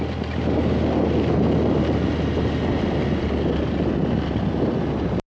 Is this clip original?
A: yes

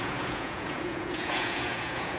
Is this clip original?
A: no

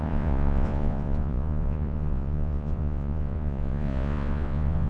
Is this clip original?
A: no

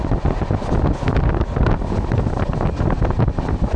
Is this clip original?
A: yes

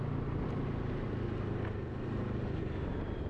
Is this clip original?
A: yes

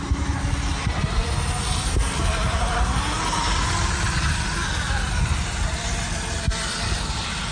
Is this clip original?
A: yes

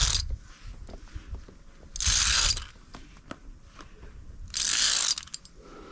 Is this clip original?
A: yes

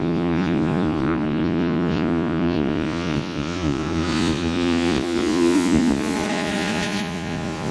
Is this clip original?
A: no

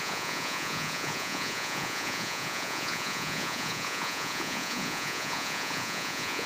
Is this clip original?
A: no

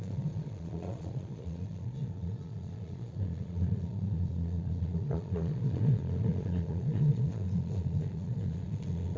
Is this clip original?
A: no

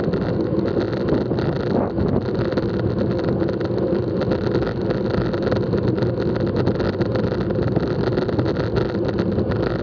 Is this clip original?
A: yes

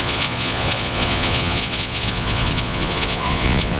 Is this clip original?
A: no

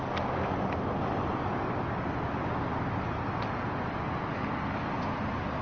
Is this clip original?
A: yes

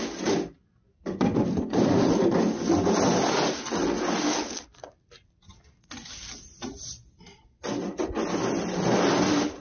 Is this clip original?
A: yes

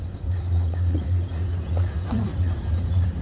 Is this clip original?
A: no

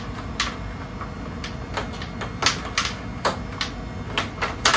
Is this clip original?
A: yes